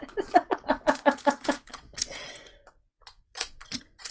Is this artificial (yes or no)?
yes